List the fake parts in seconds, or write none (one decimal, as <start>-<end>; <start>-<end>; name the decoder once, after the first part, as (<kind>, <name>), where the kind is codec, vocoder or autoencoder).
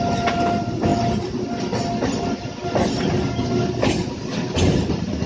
none